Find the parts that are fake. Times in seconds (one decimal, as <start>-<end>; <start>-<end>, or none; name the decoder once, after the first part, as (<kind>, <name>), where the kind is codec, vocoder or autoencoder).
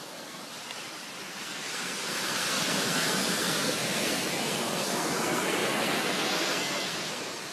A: 0.0-0.4 (codec, SNAC); 1.2-7.5